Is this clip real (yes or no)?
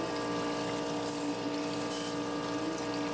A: yes